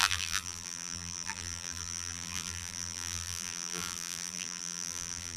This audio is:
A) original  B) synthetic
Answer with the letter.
B